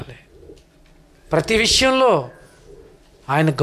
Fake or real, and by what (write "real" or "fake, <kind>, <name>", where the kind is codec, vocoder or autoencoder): real